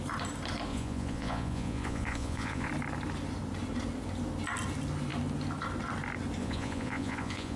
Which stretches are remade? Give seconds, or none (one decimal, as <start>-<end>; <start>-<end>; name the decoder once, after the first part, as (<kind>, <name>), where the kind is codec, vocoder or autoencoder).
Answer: 0.7-2.7 (vocoder, Vocos); 6.4-7.6